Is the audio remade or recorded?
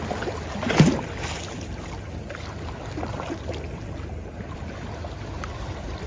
recorded